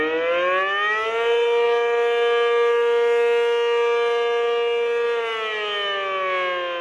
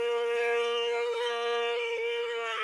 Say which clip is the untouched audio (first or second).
first